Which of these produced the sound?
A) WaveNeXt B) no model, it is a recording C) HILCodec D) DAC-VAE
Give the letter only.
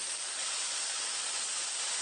B